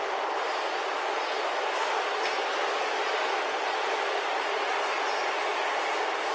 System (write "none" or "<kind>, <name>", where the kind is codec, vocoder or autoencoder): none